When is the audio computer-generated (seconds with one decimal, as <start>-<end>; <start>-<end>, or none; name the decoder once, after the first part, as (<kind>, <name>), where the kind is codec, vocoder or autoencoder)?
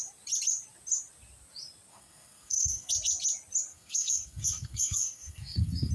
1.9-2.9 (codec, SNAC); 3.7-5.9